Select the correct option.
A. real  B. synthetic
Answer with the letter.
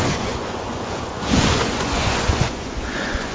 B